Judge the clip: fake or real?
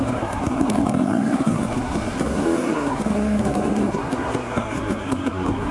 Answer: fake